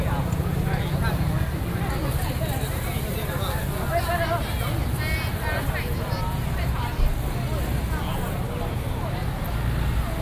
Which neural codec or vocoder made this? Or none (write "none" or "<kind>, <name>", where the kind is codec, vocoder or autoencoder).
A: none